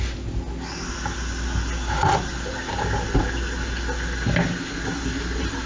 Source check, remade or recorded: recorded